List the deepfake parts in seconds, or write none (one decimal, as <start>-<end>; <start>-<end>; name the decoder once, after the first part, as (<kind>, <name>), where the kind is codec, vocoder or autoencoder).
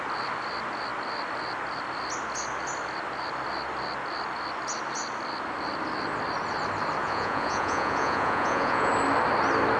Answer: 7.0-8.9 (vocoder, Vocos)